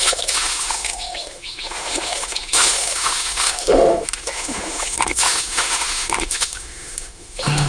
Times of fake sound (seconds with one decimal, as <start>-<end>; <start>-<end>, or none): 0.0-7.7